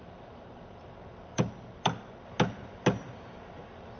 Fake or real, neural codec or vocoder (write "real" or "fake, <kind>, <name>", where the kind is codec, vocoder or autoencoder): real